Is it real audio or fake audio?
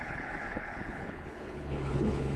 fake